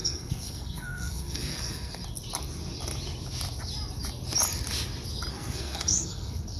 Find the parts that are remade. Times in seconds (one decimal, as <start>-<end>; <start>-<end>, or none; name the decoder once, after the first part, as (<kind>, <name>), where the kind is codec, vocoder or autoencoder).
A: 0.0-2.0 (codec, SNAC); 5.3-6.6